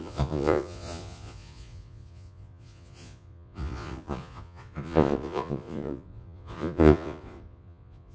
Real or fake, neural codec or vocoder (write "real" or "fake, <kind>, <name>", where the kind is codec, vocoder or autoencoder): fake, vocoder, Vocos